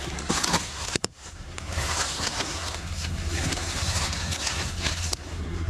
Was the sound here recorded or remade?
remade